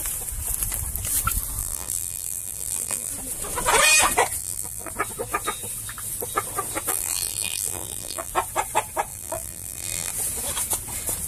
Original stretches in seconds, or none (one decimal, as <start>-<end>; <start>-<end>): 0.0-1.6; 3.1-4.4; 4.9-6.9; 8.3-9.1; 10.1-11.3